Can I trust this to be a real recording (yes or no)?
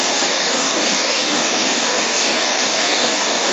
no